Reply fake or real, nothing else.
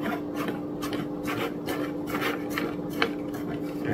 real